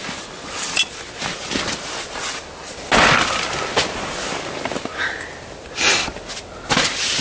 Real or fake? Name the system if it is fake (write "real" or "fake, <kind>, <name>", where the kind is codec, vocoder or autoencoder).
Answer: real